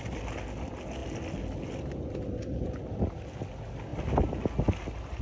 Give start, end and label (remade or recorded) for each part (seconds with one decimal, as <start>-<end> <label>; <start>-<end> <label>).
0.0-5.2 recorded